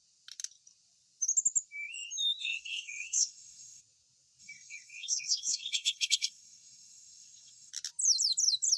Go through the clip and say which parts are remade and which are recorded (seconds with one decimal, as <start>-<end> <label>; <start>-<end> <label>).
0.0-2.4 recorded; 2.4-3.8 remade; 3.8-4.4 recorded; 4.4-7.7 remade; 7.7-8.8 recorded